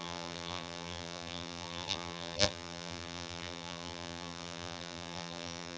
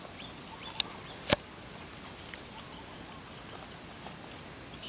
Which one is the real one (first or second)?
second